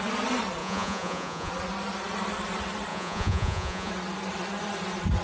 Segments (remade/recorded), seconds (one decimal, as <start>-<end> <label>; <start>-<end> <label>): 0.0-0.6 recorded; 0.6-1.5 remade; 1.5-2.9 recorded; 2.9-3.9 remade; 3.9-5.2 recorded